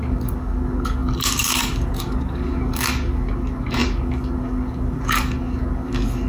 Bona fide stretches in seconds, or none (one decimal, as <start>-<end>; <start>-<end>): none

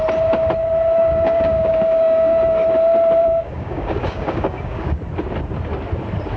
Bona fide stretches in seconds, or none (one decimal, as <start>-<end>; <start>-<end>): 0.0-1.0; 2.6-3.2; 5.0-6.4